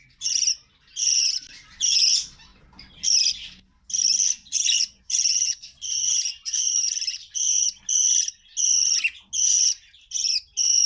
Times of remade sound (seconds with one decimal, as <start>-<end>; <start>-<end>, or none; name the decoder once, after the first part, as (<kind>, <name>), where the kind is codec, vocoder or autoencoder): none

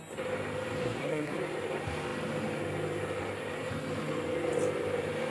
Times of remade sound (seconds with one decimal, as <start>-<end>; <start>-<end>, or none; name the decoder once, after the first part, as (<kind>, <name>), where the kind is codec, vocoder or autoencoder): 0.8-1.4 (codec, SNAC)

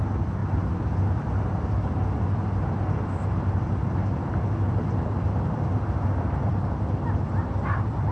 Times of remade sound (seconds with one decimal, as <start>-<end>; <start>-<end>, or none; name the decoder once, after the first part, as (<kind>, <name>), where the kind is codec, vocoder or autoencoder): none

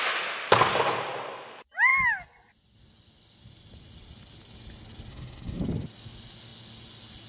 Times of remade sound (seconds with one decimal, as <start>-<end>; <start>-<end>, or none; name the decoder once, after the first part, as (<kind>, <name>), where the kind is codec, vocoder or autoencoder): 5.1-5.6 (codec, SNAC)

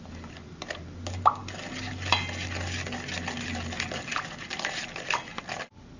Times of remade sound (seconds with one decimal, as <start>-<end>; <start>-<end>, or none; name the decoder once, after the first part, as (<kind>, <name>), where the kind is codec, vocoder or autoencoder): none

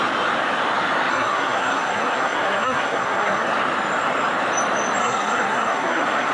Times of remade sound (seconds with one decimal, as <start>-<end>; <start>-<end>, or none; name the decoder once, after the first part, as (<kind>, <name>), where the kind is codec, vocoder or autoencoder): 1.1-3.5 (codec, SNAC); 5.0-6.3

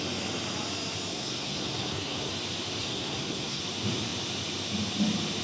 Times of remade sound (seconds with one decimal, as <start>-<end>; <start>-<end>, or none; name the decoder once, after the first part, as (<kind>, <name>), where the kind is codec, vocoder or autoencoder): 1.1-2.3 (codec, SNAC); 2.8-3.6

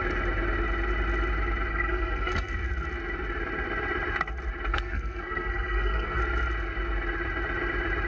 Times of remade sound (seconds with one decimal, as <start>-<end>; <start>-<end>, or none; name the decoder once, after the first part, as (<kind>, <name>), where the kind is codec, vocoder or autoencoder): 1.7-2.5 (codec, SNAC); 4.7-6.2